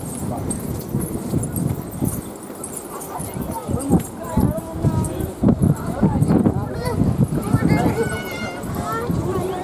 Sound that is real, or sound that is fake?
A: real